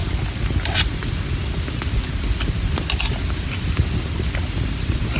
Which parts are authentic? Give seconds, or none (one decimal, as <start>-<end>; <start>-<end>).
0.0-5.2

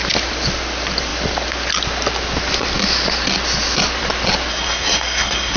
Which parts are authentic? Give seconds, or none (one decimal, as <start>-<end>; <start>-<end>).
0.0-4.5

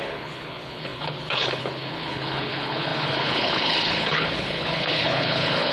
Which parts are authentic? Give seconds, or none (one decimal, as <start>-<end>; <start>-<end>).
none

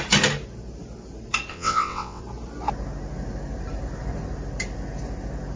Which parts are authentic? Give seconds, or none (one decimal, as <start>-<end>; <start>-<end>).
0.0-1.5; 2.2-5.6

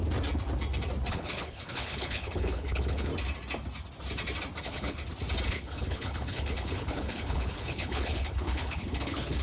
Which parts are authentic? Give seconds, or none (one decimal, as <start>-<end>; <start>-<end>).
0.0-1.1; 3.1-4.6; 5.0-5.5